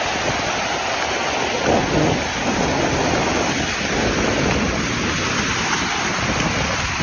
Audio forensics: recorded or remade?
recorded